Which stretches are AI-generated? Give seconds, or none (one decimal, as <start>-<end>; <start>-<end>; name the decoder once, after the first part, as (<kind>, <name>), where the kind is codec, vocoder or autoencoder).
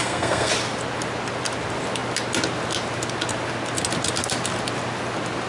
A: 0.0-0.5 (codec, SNAC)